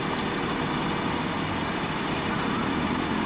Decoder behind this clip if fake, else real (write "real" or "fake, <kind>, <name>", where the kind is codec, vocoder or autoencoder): real